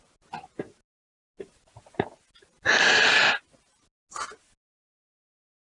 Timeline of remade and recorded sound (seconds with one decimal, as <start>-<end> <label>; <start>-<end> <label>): 0.0-5.7 recorded